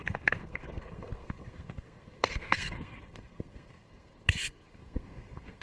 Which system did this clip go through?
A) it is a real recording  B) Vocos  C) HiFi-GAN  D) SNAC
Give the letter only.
D